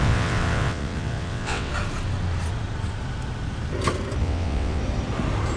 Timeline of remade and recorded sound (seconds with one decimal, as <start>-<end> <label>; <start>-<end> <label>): 0.0-1.7 remade; 1.7-4.2 recorded; 4.2-4.8 remade; 4.8-5.6 recorded